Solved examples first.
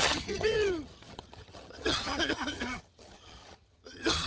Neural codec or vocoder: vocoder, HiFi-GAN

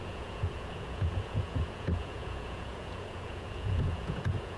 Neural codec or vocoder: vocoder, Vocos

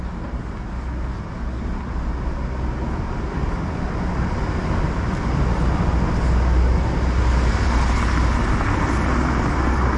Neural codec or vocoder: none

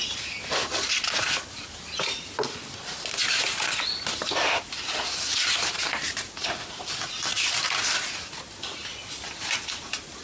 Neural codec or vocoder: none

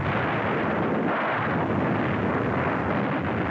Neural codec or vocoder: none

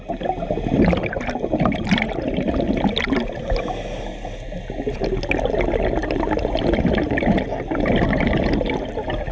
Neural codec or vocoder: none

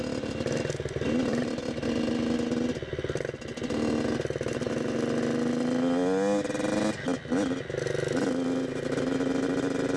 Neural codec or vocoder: none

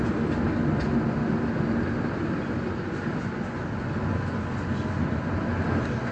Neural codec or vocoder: none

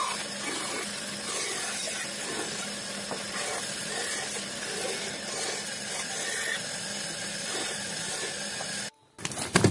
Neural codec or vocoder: none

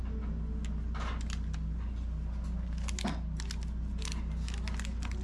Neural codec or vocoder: none